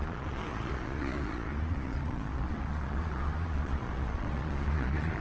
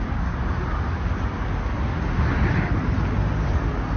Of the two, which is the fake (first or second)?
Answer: first